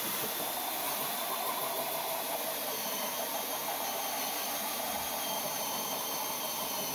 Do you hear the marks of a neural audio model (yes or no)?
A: yes